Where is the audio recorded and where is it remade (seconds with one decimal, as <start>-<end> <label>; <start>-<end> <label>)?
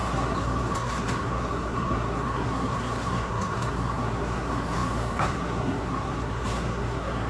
0.0-7.3 remade